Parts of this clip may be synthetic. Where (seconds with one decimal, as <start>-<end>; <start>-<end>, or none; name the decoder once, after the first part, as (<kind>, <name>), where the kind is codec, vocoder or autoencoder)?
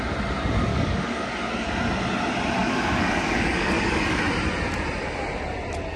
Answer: 0.7-1.7 (codec, DAC); 2.6-4.2